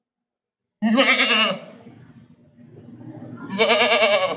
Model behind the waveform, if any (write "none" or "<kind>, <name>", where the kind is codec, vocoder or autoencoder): none